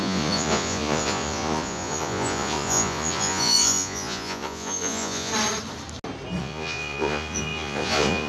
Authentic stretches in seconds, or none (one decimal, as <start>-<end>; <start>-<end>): 5.3-6.4